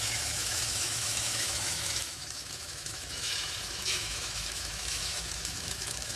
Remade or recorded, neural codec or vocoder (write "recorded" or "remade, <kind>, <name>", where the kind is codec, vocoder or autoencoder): remade, autoencoder, DAC-VAE